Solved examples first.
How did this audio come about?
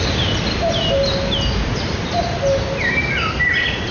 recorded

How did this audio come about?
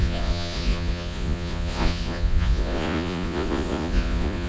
remade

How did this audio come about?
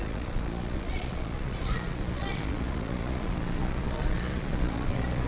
remade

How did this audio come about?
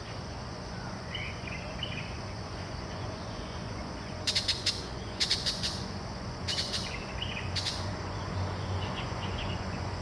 remade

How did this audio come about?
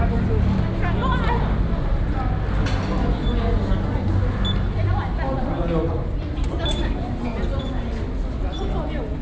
recorded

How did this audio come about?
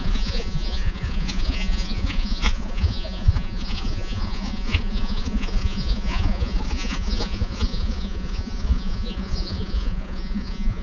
remade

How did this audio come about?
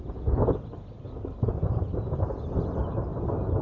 recorded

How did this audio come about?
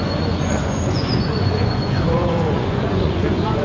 remade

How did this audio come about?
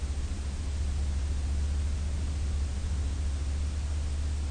recorded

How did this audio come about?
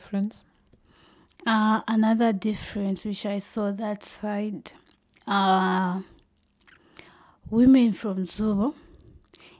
recorded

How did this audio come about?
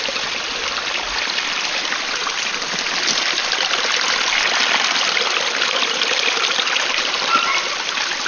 recorded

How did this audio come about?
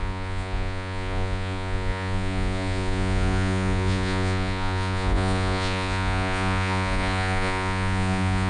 remade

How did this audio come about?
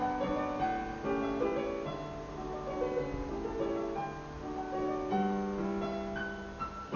recorded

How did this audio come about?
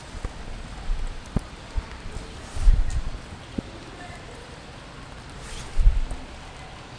recorded